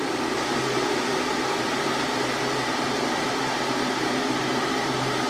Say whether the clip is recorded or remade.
remade